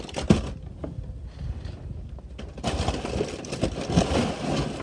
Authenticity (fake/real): real